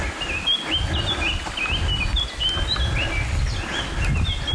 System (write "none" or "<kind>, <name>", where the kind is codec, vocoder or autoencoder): none